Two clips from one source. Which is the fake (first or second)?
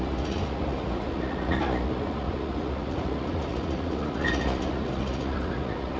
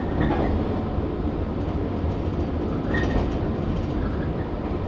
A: first